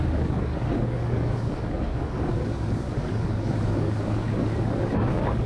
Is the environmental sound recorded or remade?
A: remade